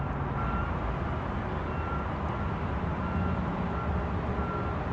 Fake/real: real